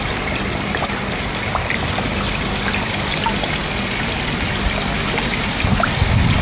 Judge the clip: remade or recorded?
recorded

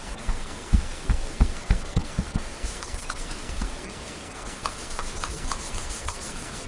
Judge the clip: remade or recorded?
remade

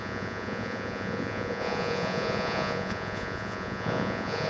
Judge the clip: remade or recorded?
remade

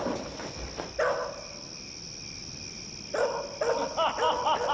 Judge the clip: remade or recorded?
recorded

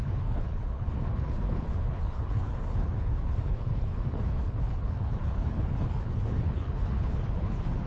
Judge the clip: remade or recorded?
remade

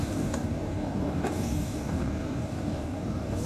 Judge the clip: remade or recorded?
remade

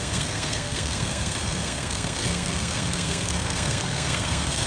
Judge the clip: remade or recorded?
remade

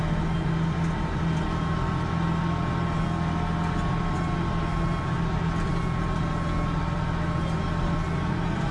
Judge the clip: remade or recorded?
recorded